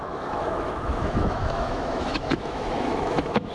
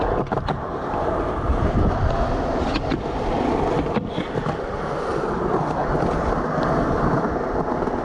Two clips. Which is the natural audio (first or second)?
second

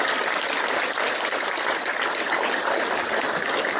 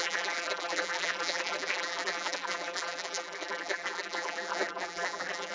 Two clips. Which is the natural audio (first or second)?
first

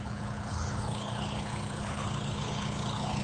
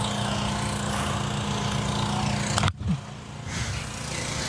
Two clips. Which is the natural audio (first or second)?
second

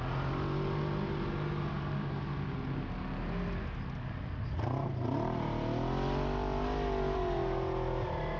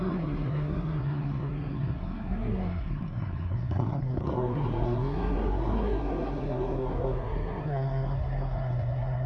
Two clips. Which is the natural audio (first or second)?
first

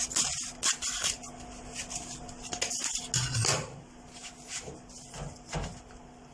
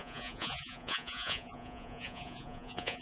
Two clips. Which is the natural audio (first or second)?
first